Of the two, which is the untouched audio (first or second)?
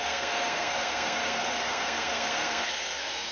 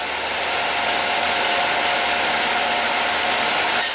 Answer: second